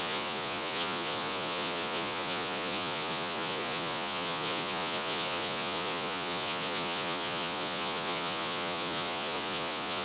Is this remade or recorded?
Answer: remade